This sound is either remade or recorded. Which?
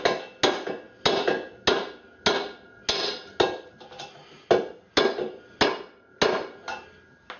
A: recorded